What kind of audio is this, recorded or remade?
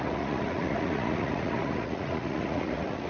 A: remade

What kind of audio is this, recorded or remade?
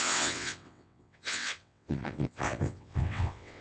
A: remade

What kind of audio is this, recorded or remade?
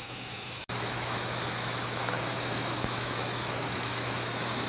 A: remade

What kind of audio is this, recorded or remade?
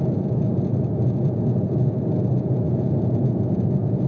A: remade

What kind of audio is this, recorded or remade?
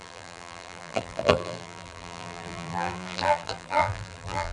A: remade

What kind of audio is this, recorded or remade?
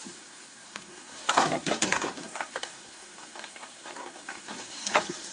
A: remade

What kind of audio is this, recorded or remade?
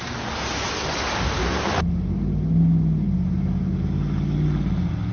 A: recorded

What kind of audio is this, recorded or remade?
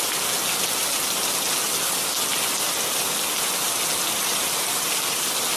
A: recorded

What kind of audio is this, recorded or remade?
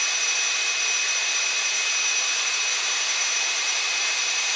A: remade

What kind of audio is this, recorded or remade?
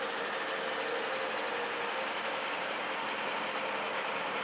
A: recorded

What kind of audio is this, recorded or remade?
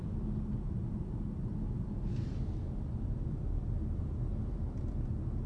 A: recorded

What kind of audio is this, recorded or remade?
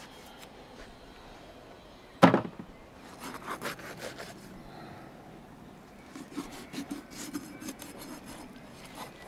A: recorded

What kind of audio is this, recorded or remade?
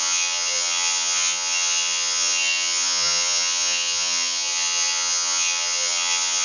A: remade